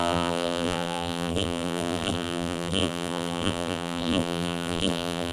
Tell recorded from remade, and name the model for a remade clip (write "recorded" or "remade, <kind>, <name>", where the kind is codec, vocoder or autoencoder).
remade, vocoder, BigVGAN v2